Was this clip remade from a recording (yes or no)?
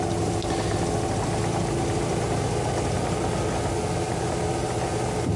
no